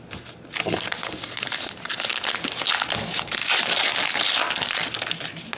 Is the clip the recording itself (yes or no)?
yes